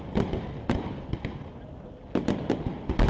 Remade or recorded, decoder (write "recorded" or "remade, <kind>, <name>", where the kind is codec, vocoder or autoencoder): recorded